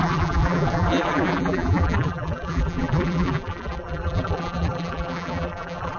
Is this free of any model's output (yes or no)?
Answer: no